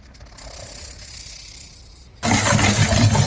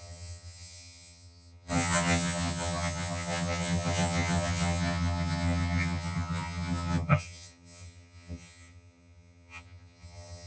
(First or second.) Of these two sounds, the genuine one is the first